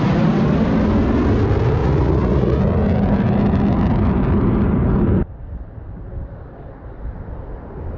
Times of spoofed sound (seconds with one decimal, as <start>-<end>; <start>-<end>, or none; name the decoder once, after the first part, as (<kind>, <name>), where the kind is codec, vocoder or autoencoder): 1.8-2.6 (vocoder, Vocos)